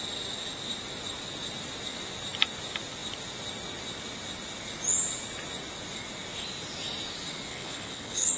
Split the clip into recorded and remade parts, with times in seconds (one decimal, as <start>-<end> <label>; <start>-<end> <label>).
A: 0.0-7.5 recorded; 7.5-8.4 remade